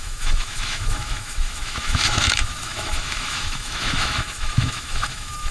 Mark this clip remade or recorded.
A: remade